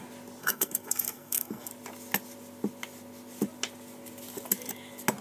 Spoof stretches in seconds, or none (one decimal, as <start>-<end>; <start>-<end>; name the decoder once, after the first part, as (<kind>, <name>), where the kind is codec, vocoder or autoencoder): 0.4-1.7 (codec, SNAC)

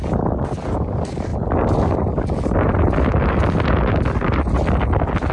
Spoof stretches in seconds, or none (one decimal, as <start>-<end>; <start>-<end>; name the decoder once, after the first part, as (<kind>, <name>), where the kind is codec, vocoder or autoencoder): none

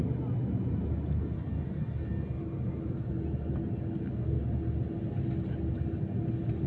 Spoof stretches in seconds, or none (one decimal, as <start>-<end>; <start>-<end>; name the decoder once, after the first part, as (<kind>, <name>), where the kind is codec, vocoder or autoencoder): 4.0-4.4 (codec, SNAC)

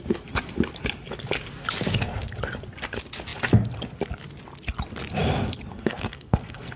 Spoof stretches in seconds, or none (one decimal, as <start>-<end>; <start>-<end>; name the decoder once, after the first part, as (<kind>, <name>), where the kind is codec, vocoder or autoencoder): 5.7-6.8 (codec, SNAC)

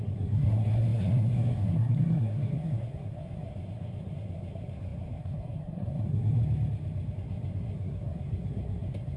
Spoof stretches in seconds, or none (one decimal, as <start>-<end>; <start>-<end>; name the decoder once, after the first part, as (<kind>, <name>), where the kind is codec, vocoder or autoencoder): 0.0-6.4 (codec, SNAC); 7.1-9.2

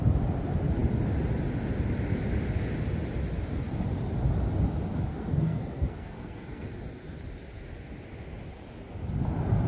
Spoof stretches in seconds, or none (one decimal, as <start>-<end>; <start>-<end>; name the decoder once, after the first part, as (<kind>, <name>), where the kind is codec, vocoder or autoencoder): 5.1-6.7 (codec, SNAC)

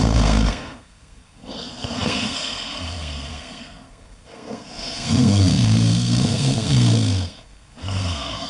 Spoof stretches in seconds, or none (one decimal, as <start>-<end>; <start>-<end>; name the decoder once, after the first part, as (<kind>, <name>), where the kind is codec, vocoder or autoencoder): 0.0-8.5 (codec, SNAC)

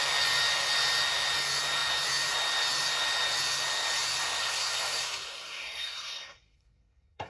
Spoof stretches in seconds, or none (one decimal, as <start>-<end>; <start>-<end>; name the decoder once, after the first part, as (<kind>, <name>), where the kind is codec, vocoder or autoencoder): 4.4-7.3 (codec, SNAC)